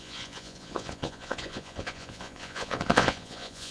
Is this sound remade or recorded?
remade